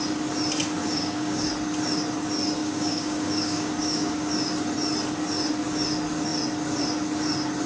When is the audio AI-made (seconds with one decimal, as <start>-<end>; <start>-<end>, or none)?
0.8-1.5; 2.6-4.3